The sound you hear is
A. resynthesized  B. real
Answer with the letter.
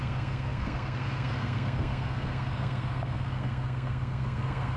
A